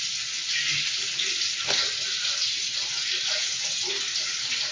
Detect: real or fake real